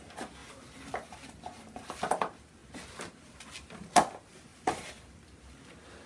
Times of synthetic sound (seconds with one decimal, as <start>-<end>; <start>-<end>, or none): 0.4-2.1; 4.5-5.0